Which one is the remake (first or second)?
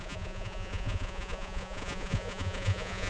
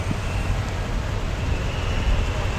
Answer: first